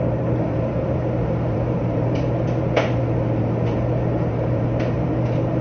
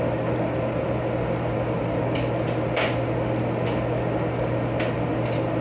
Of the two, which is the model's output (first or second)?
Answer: first